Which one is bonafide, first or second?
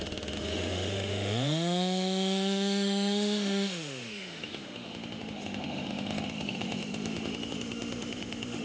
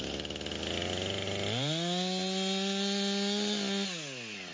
second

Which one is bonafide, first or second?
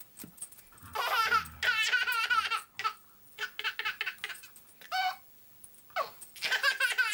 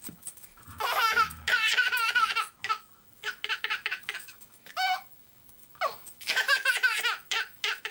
first